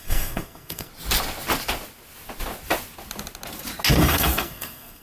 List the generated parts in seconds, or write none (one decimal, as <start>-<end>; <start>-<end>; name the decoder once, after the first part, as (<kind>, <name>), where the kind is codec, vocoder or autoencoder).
0.0-0.9 (codec, SNAC); 3.9-5.0